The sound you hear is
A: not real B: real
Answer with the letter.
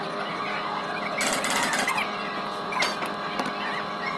B